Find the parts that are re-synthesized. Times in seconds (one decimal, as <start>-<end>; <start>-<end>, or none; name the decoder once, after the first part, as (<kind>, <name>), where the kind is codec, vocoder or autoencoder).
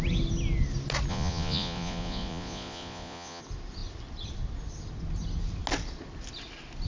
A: 1.1-3.4 (vocoder, Vocos)